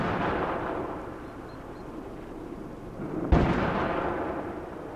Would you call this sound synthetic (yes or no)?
no